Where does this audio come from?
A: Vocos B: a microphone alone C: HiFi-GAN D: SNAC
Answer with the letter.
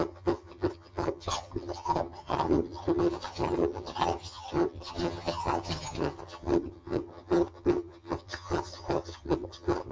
C